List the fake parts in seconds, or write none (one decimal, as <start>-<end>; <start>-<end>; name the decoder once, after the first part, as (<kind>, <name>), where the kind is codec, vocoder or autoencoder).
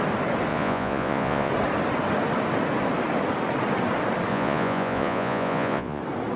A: 0.5-1.5 (vocoder, Vocos); 4.3-6.0